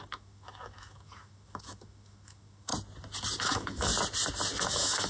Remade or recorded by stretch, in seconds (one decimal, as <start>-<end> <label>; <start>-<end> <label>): 0.0-2.7 remade; 2.7-3.4 recorded; 3.4-3.9 remade; 3.9-4.6 recorded; 4.6-5.1 remade

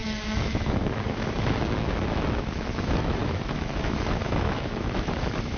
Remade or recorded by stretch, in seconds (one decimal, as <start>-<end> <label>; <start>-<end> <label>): 0.0-5.6 remade

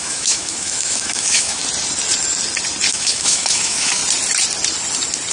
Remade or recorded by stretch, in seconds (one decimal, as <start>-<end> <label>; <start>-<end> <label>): 0.0-1.6 remade; 1.6-2.9 recorded; 2.9-4.0 remade; 4.0-5.3 recorded

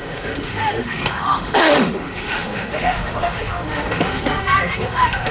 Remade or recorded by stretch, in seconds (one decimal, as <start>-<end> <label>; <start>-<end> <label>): 0.0-5.3 remade

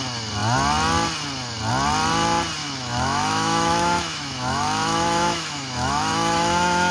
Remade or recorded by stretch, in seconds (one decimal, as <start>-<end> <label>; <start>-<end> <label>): 0.0-2.6 recorded; 2.6-6.9 remade